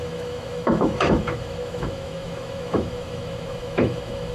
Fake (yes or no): yes